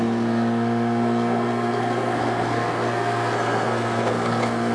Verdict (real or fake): fake